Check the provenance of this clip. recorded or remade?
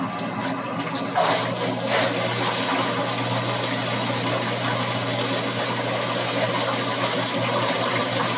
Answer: recorded